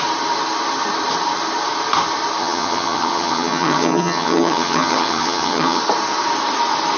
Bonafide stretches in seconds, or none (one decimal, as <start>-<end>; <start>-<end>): 0.0-2.4; 5.8-7.0